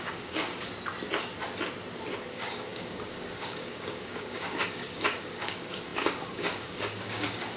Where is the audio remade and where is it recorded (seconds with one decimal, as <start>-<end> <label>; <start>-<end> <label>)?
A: 0.0-0.7 remade; 0.7-2.3 recorded; 2.3-7.6 remade